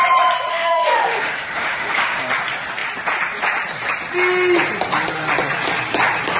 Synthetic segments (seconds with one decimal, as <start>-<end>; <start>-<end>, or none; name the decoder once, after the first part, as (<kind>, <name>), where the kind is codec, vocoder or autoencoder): 0.5-2.2 (autoencoder, DAC-VAE)